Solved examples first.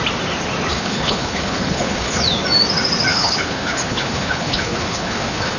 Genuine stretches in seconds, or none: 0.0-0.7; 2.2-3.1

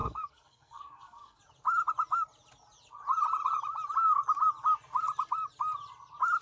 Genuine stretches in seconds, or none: 1.4-6.4

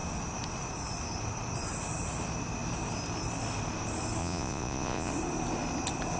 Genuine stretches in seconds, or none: 0.0-4.2; 5.1-6.2